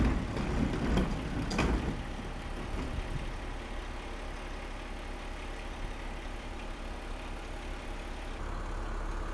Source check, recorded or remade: recorded